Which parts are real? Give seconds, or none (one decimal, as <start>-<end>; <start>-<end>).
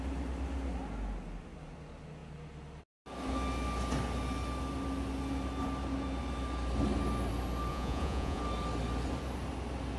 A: 0.0-7.7; 8.4-10.0